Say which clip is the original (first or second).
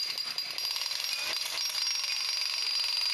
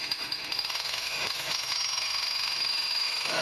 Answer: first